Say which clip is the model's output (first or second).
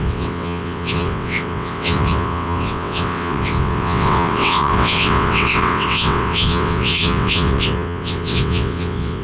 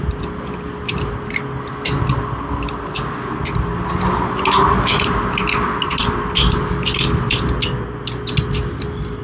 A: first